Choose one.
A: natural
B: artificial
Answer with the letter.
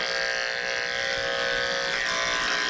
A